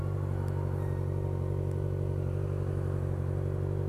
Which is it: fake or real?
real